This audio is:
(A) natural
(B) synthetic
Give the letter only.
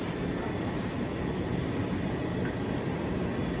A